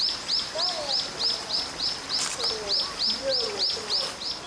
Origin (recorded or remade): recorded